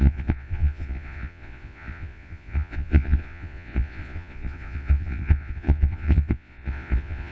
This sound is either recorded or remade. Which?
remade